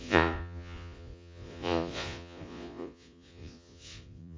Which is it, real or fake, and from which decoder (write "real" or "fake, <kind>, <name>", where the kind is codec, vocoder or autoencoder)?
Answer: fake, vocoder, Vocos